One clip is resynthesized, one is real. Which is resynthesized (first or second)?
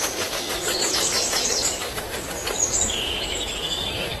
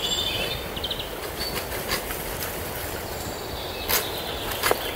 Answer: first